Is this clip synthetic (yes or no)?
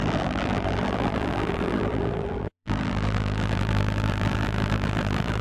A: yes